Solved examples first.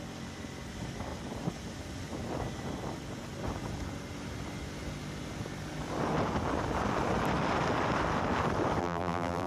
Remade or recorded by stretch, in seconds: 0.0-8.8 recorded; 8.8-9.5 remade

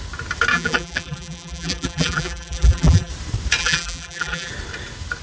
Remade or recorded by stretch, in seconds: 0.0-0.5 recorded; 0.5-3.1 remade; 3.1-3.6 recorded; 3.6-4.5 remade; 4.5-5.2 recorded

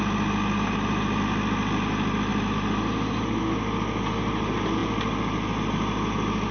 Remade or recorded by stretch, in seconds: 0.0-6.5 recorded

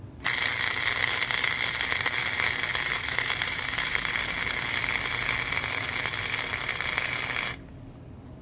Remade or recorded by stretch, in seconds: 0.0-2.7 recorded; 2.7-4.1 remade; 4.1-8.4 recorded